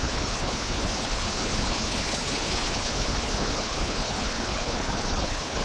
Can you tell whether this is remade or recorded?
remade